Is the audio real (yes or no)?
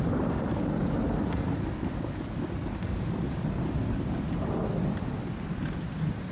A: yes